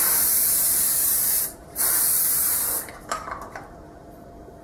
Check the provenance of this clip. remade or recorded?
remade